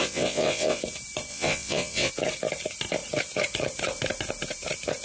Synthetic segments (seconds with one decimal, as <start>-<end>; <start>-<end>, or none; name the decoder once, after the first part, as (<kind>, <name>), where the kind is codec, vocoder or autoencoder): 0.0-0.8 (vocoder, WaveNeXt); 1.3-2.1